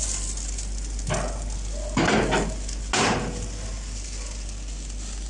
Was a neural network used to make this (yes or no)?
no